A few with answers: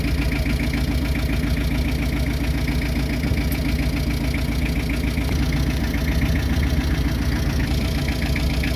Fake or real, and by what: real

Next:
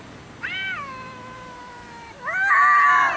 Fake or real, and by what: fake, vocoder, BigVGAN v2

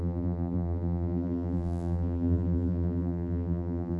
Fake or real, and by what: fake, vocoder, BigVGAN v2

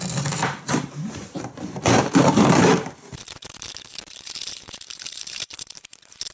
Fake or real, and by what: fake, vocoder, BigVGAN v2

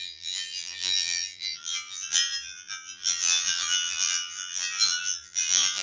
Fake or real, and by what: fake, vocoder, BigVGAN v2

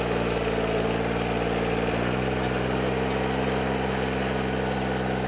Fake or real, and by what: real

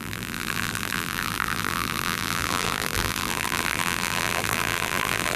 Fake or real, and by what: fake, vocoder, BigVGAN v2